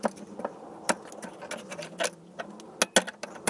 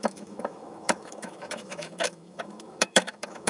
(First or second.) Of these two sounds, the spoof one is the second